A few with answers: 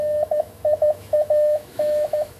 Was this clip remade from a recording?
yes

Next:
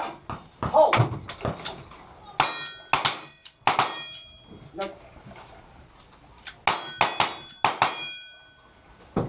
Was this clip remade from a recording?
no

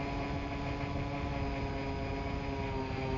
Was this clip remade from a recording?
no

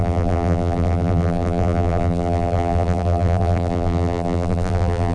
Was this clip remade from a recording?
yes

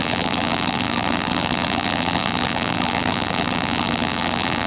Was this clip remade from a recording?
yes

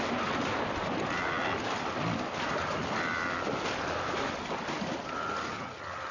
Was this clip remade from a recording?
no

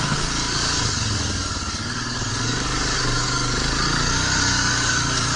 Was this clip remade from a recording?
yes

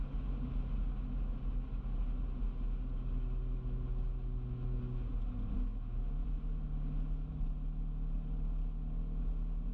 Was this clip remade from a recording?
no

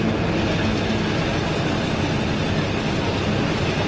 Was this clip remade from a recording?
no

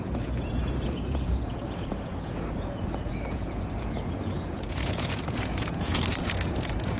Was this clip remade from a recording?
yes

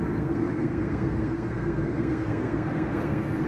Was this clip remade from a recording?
yes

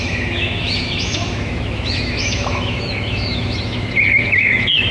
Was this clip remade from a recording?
yes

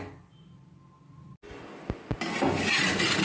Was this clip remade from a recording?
no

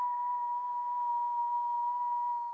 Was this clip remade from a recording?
no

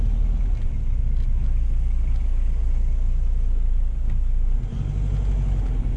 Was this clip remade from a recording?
no